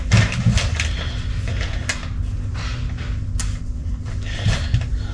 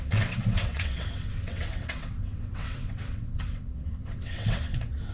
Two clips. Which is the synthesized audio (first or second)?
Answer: second